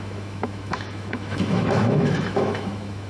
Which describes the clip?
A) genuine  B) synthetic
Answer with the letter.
B